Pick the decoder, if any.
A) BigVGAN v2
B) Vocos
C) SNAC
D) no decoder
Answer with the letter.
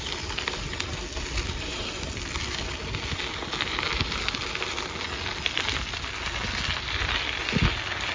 D